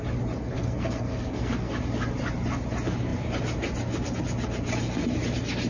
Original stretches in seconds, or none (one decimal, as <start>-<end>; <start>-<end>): 0.0-0.4; 1.7-5.7